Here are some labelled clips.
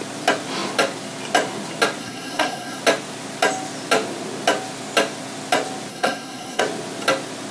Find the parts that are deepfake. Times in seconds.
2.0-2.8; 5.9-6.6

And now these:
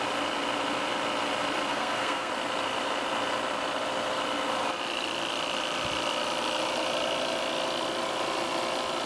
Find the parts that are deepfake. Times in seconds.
1.7-2.3

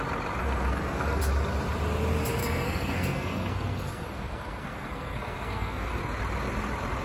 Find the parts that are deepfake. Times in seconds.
0.4-1.2; 2.4-6.0